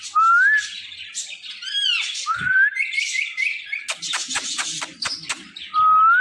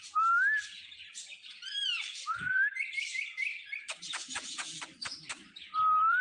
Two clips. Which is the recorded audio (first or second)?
first